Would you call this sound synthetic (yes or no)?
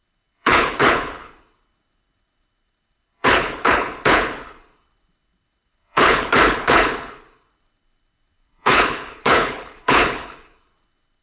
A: yes